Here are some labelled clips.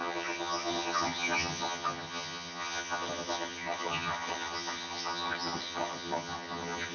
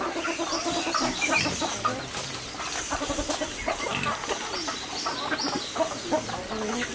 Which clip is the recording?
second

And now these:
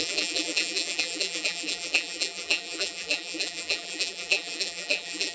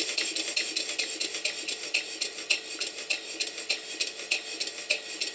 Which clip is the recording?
second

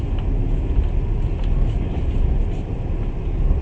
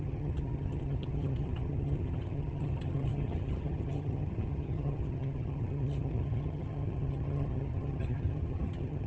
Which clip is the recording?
first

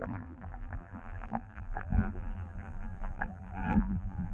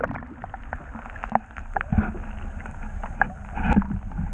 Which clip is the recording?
second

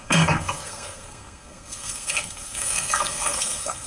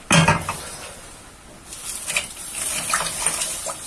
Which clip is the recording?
second